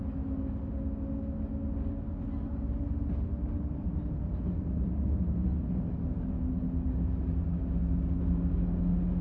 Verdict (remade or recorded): recorded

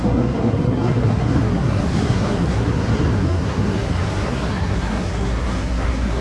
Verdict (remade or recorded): remade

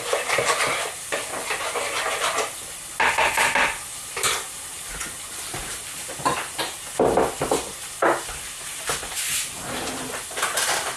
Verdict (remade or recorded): recorded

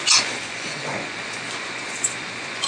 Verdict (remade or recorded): remade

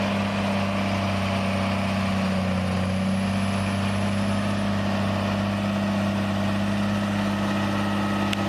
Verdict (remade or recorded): recorded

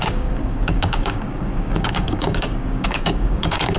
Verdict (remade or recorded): remade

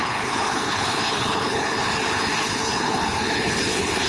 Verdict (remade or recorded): remade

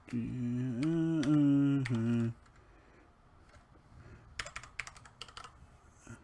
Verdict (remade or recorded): recorded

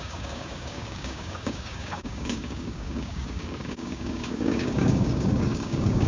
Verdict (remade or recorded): remade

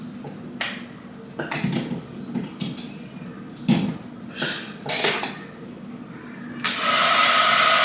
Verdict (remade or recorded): recorded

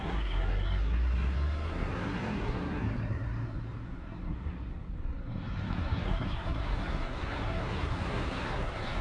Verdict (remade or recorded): remade